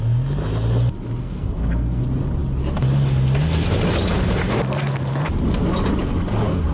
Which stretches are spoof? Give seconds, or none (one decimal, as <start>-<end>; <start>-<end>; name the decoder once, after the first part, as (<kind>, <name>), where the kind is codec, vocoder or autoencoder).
1.2-2.0 (codec, SNAC)